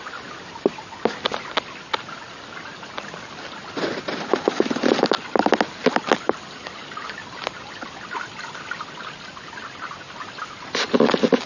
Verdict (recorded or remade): recorded